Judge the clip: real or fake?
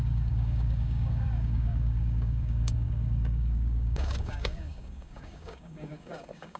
fake